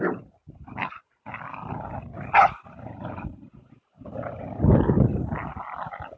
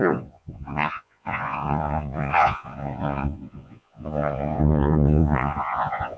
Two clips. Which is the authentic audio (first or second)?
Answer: first